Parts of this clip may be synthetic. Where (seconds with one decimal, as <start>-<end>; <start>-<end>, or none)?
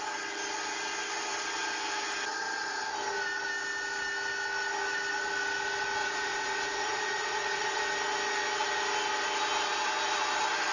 6.0-7.8